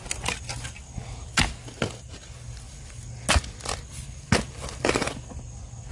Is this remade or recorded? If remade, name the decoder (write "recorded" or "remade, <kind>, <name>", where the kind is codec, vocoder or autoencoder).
recorded